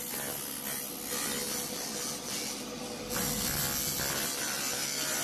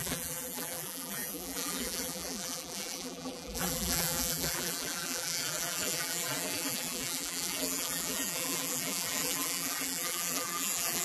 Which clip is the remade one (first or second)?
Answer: second